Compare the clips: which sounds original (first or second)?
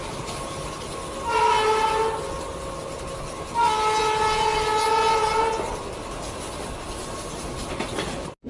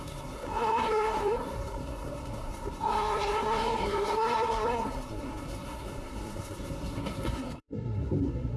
first